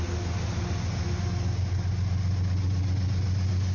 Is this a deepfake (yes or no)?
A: no